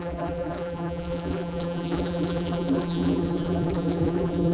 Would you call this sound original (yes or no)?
no